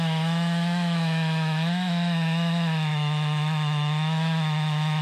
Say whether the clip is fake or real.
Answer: fake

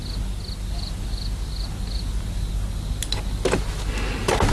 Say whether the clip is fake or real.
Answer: real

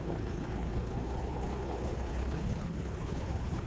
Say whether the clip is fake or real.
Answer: fake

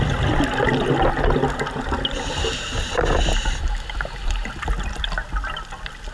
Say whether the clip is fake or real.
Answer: real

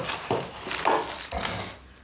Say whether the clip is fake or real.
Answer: real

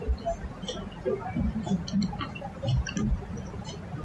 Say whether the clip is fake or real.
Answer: real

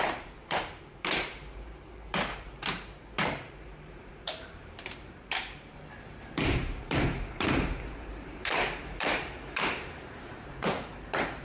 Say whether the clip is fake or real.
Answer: fake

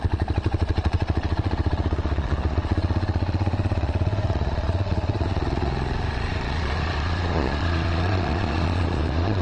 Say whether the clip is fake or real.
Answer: fake